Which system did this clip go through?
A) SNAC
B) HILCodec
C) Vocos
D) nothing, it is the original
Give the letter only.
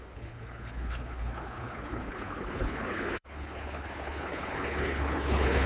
B